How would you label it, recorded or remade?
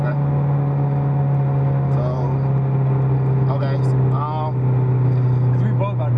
recorded